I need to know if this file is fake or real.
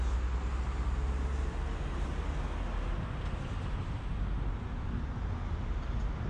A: real